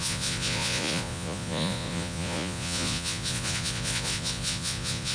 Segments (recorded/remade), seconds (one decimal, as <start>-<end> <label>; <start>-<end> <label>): 0.0-5.1 remade

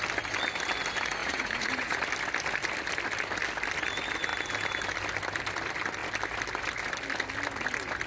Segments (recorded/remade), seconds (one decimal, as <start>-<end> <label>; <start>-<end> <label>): 0.0-1.2 recorded; 1.2-2.0 remade; 2.0-8.1 recorded

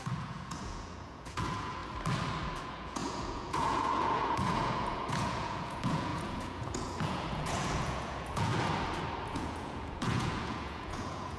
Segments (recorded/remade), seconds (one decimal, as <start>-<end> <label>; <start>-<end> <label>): 0.0-1.8 remade; 1.8-2.6 recorded; 2.6-8.5 remade; 8.5-9.3 recorded; 9.3-11.4 remade

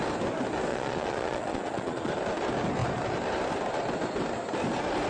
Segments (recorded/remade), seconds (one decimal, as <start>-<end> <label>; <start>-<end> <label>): 0.0-0.7 recorded; 0.7-2.1 remade; 2.1-5.1 recorded

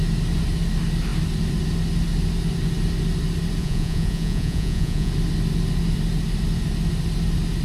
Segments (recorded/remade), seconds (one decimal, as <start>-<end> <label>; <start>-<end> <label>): 0.0-3.6 recorded; 3.6-5.1 remade; 5.1-7.6 recorded

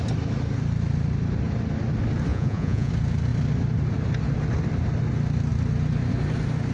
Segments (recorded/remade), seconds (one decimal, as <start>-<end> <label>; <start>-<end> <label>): 0.0-2.3 recorded; 2.3-2.9 remade; 2.9-6.7 recorded